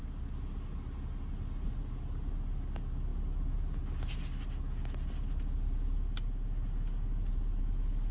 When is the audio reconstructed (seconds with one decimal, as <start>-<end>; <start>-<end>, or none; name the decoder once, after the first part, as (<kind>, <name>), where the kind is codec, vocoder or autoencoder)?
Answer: none